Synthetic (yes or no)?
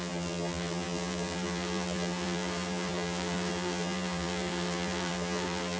yes